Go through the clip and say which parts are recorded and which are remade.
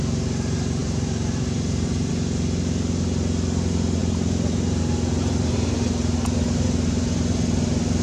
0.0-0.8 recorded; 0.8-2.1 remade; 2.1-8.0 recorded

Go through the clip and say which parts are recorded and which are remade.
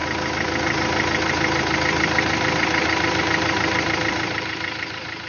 0.0-3.2 recorded; 3.2-5.3 remade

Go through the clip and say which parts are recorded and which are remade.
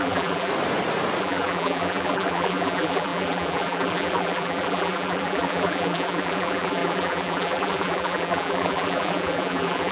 0.0-0.5 remade; 0.5-1.2 recorded; 1.2-9.9 remade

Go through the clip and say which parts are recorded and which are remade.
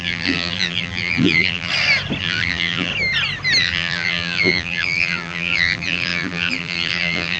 0.0-1.7 remade; 1.7-2.2 recorded; 2.2-2.9 remade; 2.9-3.6 recorded; 3.6-7.4 remade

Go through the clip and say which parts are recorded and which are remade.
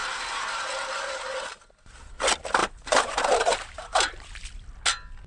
0.0-1.6 remade; 1.6-2.6 recorded; 2.6-4.3 remade; 4.3-5.3 recorded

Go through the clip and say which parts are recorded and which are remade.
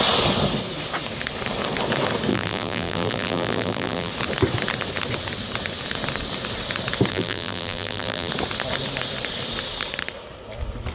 0.0-2.3 recorded; 2.3-4.1 remade; 4.1-7.1 recorded; 7.1-8.3 remade; 8.3-10.9 recorded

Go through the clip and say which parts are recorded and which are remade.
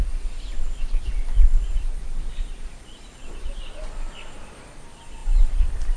0.0-3.6 remade; 3.6-5.2 recorded; 5.2-6.0 remade